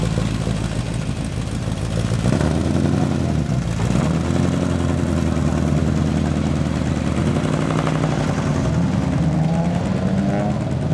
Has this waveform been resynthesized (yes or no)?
no